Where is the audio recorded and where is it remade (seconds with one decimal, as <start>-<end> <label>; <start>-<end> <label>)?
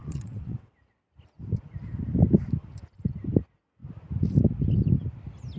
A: 0.0-0.7 remade; 0.7-5.6 recorded